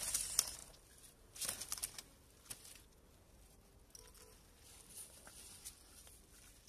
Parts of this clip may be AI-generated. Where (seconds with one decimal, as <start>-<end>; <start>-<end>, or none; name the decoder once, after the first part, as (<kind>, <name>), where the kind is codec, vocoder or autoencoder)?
none